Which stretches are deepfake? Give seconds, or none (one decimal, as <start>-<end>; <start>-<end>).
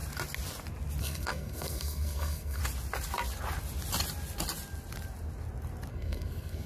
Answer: 1.0-2.6; 5.9-6.7